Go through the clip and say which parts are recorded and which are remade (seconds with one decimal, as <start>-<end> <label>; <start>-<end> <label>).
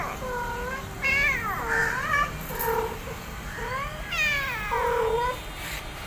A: 0.0-1.8 recorded; 1.8-3.3 remade; 3.3-6.1 recorded